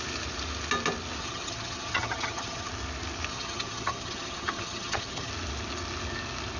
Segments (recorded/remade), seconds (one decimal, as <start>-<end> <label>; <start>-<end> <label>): 0.0-1.2 recorded; 1.2-2.7 remade; 2.7-3.3 recorded; 3.3-5.3 remade; 5.3-6.6 recorded